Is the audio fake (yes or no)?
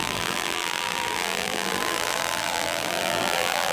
yes